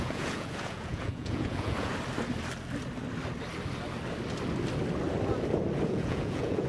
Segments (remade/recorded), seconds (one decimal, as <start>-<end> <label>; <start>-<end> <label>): 0.0-1.9 remade; 1.9-5.9 recorded; 5.9-6.7 remade